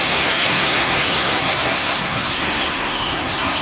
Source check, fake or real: fake